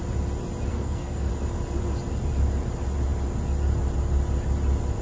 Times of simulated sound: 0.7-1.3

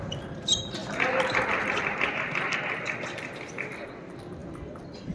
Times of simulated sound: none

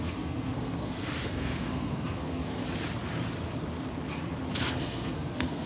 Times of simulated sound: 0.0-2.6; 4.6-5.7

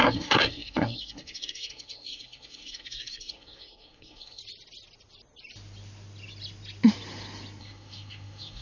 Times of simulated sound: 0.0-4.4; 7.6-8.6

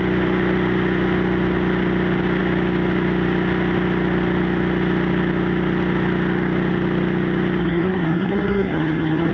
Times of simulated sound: 7.6-9.3

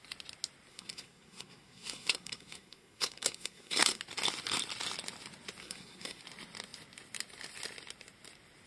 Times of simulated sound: 0.7-4.0; 5.6-6.2

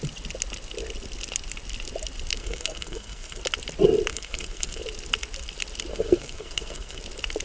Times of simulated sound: 2.4-3.4; 4.1-4.8; 5.9-7.0

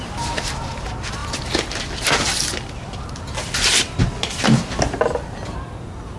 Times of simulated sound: none